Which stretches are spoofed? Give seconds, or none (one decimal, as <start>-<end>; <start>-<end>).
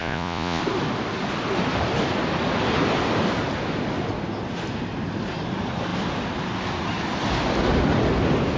0.0-0.6